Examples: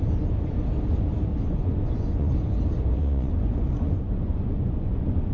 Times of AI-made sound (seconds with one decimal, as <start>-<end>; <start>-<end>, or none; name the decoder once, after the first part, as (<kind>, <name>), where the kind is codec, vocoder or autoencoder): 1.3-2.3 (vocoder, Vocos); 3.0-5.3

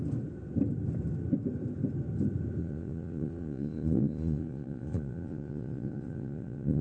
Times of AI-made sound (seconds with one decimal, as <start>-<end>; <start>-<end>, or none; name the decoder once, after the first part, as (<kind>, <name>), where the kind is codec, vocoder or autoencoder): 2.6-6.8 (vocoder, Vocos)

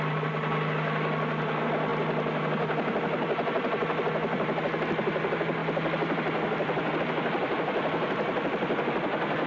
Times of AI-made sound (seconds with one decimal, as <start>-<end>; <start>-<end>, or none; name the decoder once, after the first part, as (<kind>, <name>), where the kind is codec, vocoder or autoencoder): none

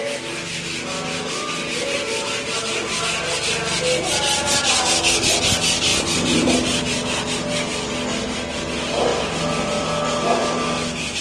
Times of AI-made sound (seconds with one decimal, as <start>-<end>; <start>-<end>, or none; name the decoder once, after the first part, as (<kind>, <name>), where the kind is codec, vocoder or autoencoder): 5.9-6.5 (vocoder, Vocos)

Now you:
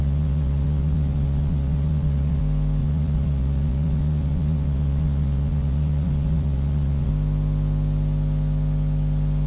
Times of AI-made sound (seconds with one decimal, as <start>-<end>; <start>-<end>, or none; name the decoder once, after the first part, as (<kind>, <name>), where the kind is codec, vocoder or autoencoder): 0.0-2.4 (vocoder, Vocos); 2.8-7.1